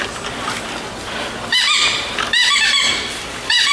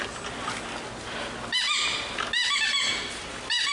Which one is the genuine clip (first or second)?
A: second